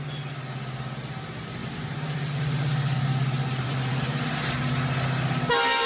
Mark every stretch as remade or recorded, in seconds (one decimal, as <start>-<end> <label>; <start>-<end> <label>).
0.0-1.6 recorded; 1.6-4.0 remade; 4.0-5.9 recorded